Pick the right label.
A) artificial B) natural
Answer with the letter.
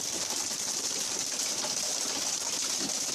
A